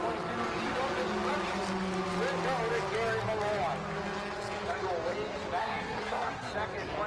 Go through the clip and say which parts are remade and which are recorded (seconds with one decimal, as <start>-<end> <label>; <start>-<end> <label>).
0.0-5.6 recorded; 5.6-6.5 remade; 6.5-7.1 recorded

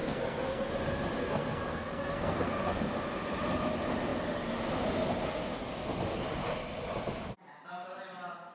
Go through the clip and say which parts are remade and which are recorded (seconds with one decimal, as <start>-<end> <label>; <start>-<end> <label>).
0.0-0.7 remade; 0.7-1.2 recorded; 1.2-2.9 remade; 2.9-8.5 recorded

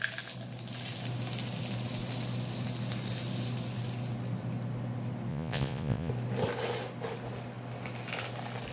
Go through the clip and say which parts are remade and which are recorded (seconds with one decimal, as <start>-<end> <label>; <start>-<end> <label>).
0.0-5.3 recorded; 5.3-6.1 remade; 6.1-8.7 recorded

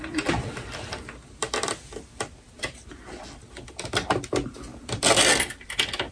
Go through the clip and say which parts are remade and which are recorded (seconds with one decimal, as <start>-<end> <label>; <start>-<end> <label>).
0.0-6.1 recorded